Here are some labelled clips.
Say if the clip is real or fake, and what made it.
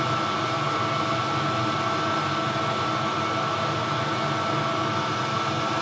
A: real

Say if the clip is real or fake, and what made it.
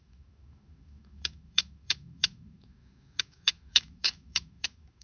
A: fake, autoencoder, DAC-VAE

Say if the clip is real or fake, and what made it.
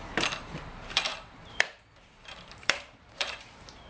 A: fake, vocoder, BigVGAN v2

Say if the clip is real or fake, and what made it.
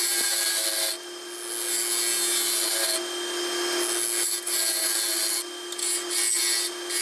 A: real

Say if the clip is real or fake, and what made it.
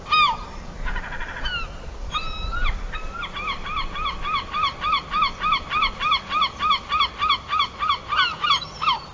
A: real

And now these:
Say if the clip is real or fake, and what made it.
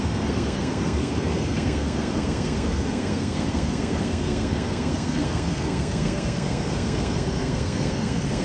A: fake, codec, SNAC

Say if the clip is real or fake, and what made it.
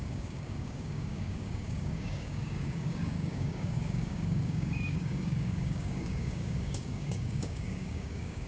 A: fake, codec, DAC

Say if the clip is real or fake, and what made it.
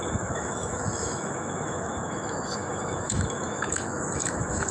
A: fake, autoencoder, DAC-VAE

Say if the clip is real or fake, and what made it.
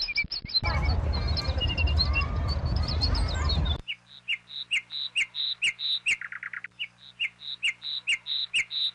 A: real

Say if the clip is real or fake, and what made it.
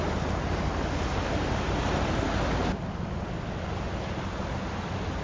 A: real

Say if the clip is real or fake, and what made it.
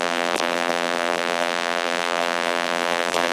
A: fake, vocoder, BigVGAN v2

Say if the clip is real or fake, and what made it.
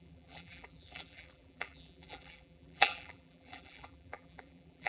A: fake, vocoder, BigVGAN v2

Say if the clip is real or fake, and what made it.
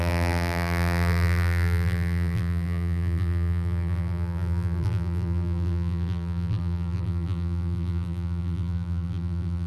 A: fake, vocoder, BigVGAN v2